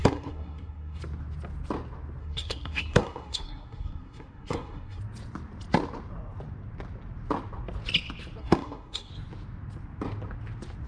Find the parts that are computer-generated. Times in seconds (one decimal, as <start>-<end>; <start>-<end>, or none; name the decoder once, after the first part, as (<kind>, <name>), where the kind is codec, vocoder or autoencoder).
0.0-1.0 (codec, SNAC); 2.2-5.0; 8.4-9.1

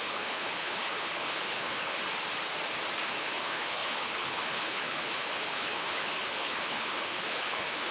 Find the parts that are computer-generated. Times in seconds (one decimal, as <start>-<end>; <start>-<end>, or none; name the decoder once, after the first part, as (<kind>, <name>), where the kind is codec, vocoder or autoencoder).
0.0-2.0 (codec, HILCodec); 3.1-7.9

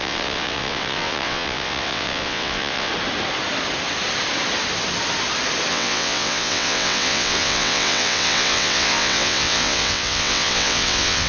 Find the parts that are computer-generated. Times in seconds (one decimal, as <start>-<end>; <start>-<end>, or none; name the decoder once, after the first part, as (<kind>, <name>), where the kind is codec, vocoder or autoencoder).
0.0-2.9 (vocoder, WaveNeXt); 5.7-11.3